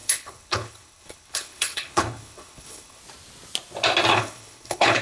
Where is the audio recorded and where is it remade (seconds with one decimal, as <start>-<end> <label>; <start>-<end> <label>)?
0.0-3.0 remade; 3.0-4.1 recorded; 4.1-5.0 remade

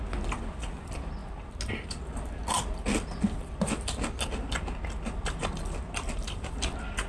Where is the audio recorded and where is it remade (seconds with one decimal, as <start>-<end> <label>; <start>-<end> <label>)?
0.0-7.1 recorded

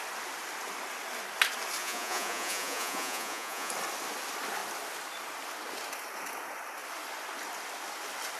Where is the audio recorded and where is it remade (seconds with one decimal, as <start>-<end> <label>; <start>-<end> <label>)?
0.0-1.8 recorded; 1.8-3.7 remade; 3.7-8.4 recorded

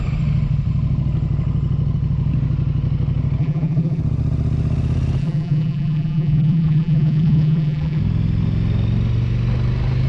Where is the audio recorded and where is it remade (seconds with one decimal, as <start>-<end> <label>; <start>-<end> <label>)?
0.0-3.4 recorded; 3.4-4.0 remade; 4.0-5.2 recorded; 5.2-8.0 remade; 8.0-10.1 recorded

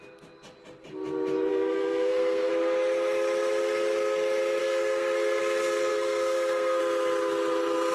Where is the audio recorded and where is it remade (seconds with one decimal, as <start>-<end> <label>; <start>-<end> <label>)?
0.0-1.5 recorded; 1.5-2.5 remade; 2.5-4.6 recorded; 4.6-5.4 remade; 5.4-5.9 recorded; 5.9-6.8 remade; 6.8-7.9 recorded